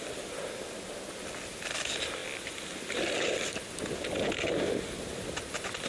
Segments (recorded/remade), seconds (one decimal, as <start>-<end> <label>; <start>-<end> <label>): 0.0-5.9 recorded